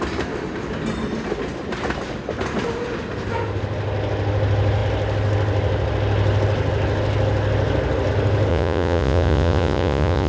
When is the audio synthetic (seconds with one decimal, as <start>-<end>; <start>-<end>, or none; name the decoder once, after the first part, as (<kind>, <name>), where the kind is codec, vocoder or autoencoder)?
8.5-10.3 (vocoder, Vocos)